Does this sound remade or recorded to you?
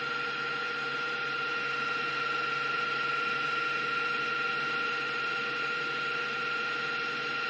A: recorded